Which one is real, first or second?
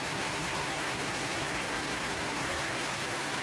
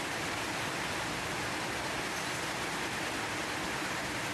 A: second